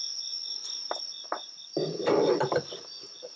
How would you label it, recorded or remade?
recorded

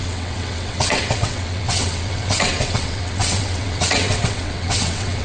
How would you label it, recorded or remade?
remade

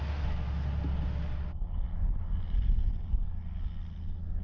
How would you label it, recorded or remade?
recorded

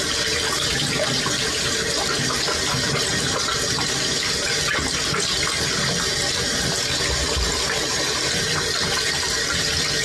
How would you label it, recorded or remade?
recorded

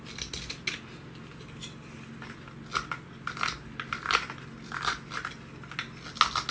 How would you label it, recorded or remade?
recorded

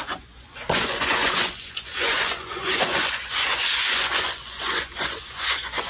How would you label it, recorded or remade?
remade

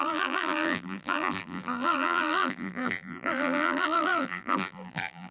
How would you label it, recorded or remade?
remade